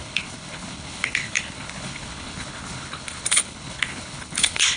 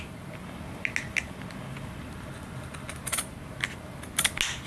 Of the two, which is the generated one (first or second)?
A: first